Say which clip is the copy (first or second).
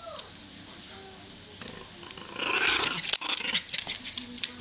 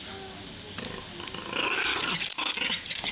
second